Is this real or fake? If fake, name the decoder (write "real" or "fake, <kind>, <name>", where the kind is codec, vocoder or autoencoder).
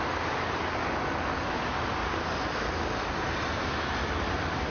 real